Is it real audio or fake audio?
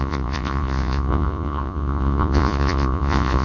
fake